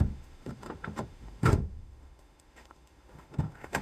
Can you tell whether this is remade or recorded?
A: remade